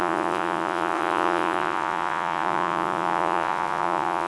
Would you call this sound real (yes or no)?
no